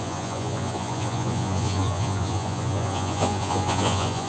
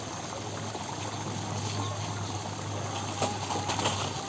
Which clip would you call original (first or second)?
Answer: second